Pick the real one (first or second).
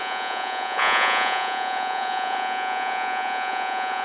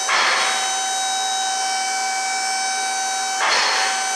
second